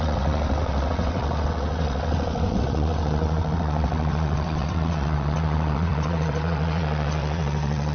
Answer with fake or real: fake